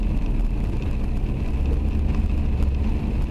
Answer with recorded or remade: recorded